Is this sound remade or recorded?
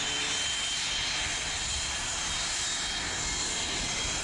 recorded